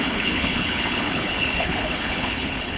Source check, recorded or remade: remade